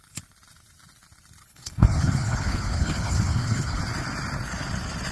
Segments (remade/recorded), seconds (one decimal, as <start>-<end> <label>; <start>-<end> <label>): 0.0-1.4 recorded; 1.4-3.8 remade; 3.8-5.1 recorded